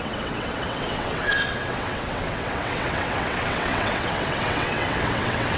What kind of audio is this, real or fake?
fake